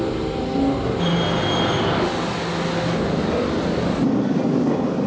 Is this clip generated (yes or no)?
no